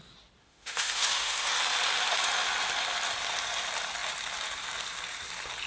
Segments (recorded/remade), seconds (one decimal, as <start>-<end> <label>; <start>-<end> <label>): 0.0-0.4 recorded; 0.4-1.5 remade; 1.5-5.7 recorded